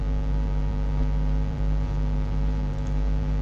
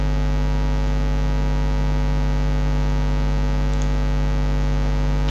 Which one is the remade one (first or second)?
first